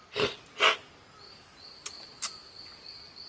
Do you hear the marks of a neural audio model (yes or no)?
no